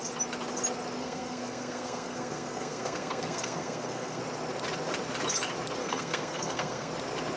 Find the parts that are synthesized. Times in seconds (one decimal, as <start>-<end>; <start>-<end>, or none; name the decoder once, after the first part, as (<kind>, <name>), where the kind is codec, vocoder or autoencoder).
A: 1.0-4.2 (codec, SNAC); 5.8-6.9